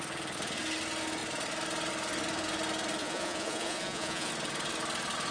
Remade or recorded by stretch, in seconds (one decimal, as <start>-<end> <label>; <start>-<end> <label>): 0.0-3.0 recorded; 3.0-4.3 remade; 4.3-5.3 recorded